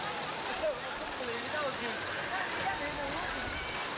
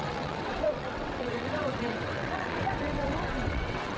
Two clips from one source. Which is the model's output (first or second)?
second